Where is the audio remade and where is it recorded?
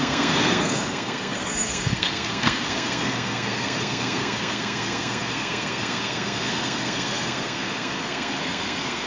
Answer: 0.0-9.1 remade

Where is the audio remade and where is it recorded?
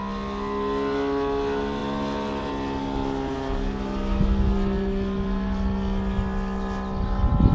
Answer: 0.0-7.5 recorded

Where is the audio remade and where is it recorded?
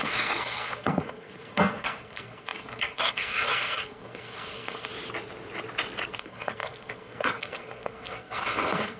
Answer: 0.0-4.9 remade; 4.9-6.1 recorded; 6.1-9.0 remade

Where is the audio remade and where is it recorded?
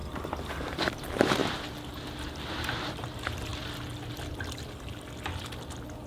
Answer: 0.0-0.5 recorded; 0.5-1.4 remade; 1.4-2.5 recorded; 2.5-3.5 remade; 3.5-6.1 recorded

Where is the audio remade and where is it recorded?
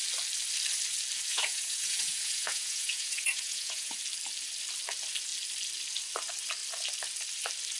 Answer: 0.0-1.3 recorded; 1.3-4.0 remade; 4.0-7.8 recorded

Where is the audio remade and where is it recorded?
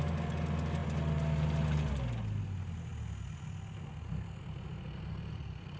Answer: 0.0-5.8 recorded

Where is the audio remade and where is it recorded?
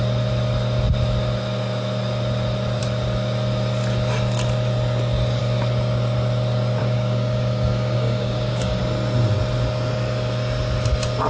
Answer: 0.0-6.8 recorded; 6.8-8.8 remade; 8.8-11.3 recorded